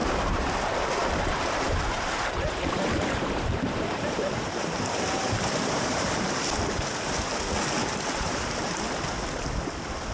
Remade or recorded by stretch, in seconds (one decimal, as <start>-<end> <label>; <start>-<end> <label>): 0.0-0.5 remade; 0.5-1.0 recorded; 1.0-6.3 remade; 6.3-7.8 recorded; 7.8-9.1 remade; 9.1-10.1 recorded